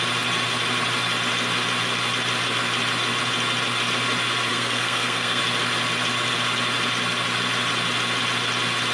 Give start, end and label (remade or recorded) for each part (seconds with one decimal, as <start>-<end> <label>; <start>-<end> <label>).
0.0-4.5 recorded; 4.5-5.4 remade; 5.4-8.9 recorded